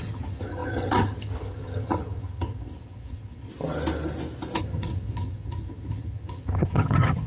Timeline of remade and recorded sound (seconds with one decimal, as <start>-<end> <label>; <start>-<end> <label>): 0.0-3.5 remade; 3.5-4.6 recorded; 4.6-7.3 remade